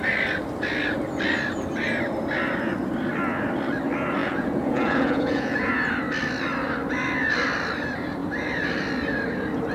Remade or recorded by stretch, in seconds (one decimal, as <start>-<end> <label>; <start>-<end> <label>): 0.0-4.2 recorded; 4.2-5.7 remade; 5.7-9.7 recorded

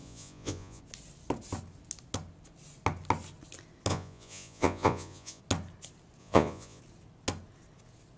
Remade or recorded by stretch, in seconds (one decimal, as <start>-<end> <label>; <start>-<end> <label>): 0.0-0.8 remade; 0.8-3.9 recorded; 3.9-5.4 remade; 5.4-6.2 recorded; 6.2-6.8 remade; 6.8-8.2 recorded